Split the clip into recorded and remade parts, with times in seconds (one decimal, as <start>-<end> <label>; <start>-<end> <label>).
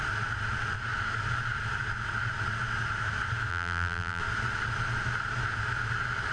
0.0-3.5 recorded; 3.5-4.2 remade; 4.2-6.3 recorded